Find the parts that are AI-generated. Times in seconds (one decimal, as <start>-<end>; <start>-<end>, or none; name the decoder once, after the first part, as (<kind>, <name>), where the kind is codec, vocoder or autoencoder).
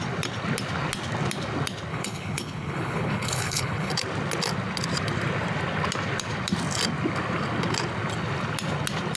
1.9-3.9 (codec, HILCodec)